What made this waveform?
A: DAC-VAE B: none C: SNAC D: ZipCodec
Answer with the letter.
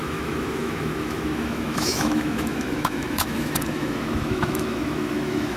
A